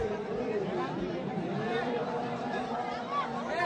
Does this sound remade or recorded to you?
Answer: remade